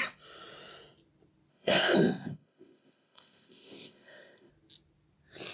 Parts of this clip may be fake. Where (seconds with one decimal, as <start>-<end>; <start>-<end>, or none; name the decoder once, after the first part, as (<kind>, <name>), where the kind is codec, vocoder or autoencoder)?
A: 1.5-4.5 (codec, ZipCodec)